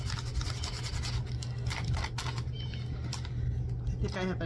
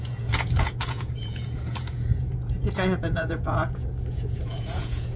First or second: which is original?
first